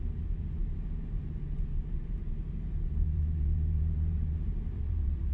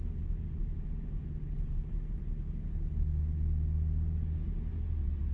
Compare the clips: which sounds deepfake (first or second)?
first